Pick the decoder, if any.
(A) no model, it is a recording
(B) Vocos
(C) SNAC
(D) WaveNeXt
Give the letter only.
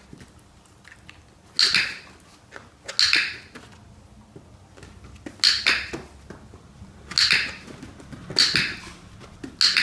A